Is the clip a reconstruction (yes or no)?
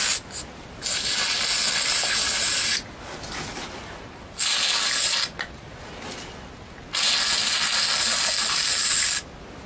no